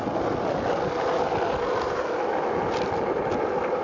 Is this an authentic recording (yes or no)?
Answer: yes